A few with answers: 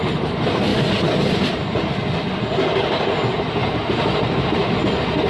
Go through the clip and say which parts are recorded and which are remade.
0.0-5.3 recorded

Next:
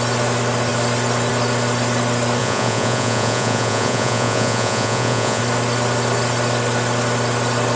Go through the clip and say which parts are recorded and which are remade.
0.0-2.4 recorded; 2.4-5.4 remade; 5.4-7.8 recorded